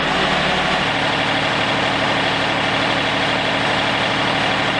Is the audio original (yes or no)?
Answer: yes